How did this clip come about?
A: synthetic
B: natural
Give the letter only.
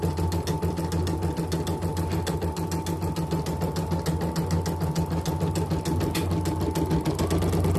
B